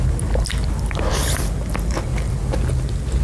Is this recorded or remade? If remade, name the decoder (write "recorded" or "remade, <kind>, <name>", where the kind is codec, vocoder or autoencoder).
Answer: recorded